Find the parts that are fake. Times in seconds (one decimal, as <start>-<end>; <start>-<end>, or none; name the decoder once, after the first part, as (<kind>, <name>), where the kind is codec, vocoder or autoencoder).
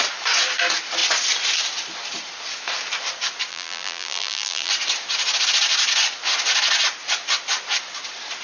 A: 3.5-4.7 (vocoder, BigVGAN v2)